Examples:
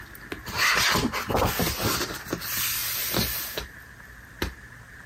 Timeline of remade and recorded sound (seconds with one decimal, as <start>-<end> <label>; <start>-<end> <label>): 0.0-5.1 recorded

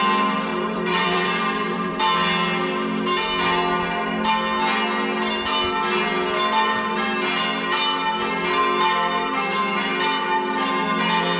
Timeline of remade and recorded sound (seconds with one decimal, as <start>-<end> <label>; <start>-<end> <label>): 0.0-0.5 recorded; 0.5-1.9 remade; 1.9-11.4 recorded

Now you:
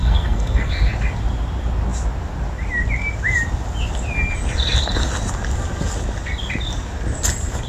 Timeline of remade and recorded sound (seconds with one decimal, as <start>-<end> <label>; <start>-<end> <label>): 0.0-0.9 remade; 0.9-7.7 recorded

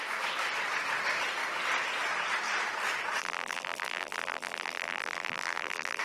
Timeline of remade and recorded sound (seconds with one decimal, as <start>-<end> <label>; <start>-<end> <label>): 0.0-3.2 recorded; 3.2-6.0 remade

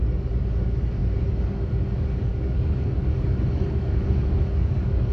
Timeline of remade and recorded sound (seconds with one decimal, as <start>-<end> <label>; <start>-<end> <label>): 0.0-5.1 remade

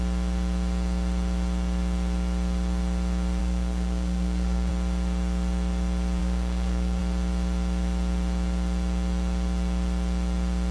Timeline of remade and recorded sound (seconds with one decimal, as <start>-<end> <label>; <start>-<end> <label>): 0.0-3.4 recorded; 3.4-4.7 remade; 4.7-6.2 recorded; 6.2-7.0 remade; 7.0-10.7 recorded

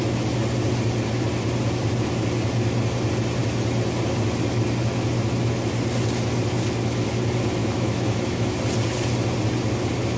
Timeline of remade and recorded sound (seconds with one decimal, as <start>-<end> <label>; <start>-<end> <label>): 0.0-7.6 recorded; 7.6-8.6 remade; 8.6-10.2 recorded